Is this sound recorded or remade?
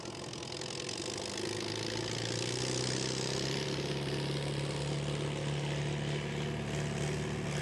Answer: recorded